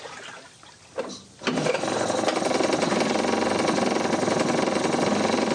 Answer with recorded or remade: recorded